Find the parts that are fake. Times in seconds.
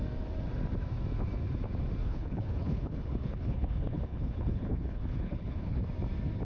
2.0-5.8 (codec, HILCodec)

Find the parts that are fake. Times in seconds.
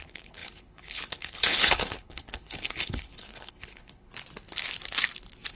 0.0-4.1 (codec, HILCodec)